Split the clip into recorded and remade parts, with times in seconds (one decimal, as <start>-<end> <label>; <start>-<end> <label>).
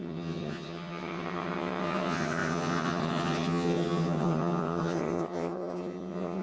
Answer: 0.0-6.4 remade